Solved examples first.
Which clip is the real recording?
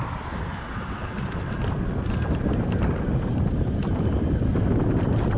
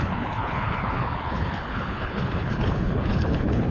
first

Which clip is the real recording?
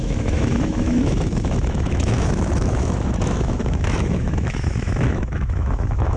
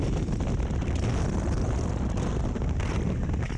second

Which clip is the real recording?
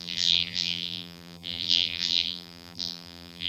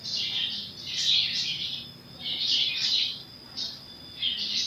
second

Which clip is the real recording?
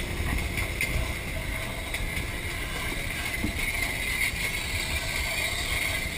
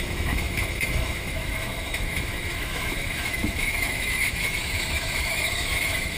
first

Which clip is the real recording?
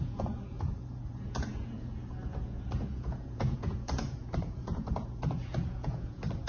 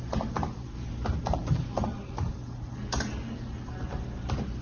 second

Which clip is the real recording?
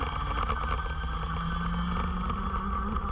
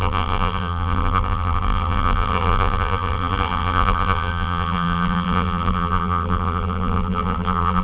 first